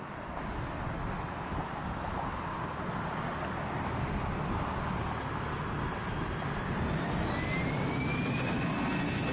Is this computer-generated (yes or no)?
no